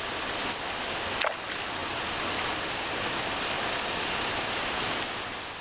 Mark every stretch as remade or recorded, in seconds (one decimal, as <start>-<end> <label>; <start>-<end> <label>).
0.0-5.6 recorded